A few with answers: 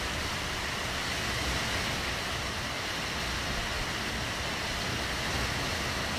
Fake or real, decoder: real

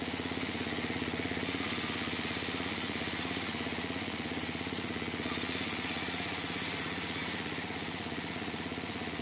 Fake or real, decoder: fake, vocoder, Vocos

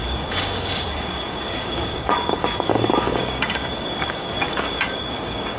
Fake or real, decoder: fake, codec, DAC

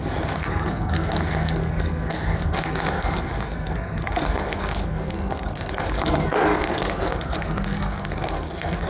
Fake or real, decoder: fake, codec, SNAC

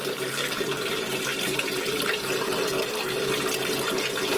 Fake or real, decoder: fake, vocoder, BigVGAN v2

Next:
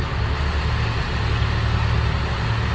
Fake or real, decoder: real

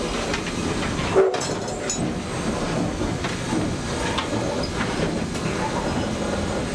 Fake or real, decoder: real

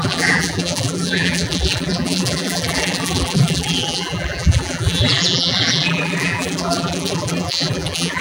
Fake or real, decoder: fake, vocoder, BigVGAN v2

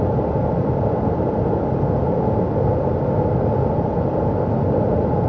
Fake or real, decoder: real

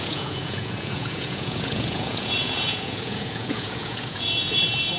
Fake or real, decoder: fake, vocoder, Vocos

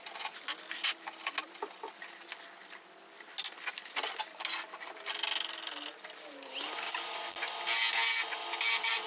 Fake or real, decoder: real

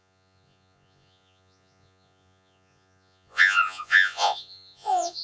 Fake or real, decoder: fake, vocoder, Vocos